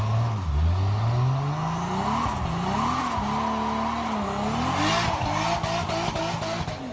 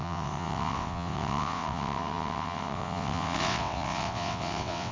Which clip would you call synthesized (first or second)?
second